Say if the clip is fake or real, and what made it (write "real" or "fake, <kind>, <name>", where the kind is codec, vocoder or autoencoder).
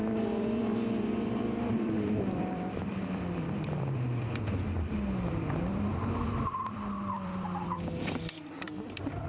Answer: fake, vocoder, BigVGAN v2